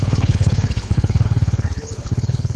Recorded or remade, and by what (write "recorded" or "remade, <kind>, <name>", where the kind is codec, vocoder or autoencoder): remade, codec, HILCodec